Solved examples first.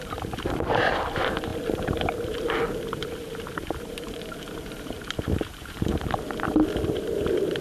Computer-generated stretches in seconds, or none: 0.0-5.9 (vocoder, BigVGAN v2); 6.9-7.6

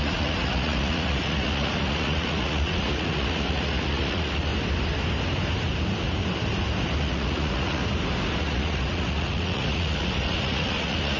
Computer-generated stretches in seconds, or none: 0.0-4.5 (vocoder, Vocos); 7.0-7.8; 8.4-11.2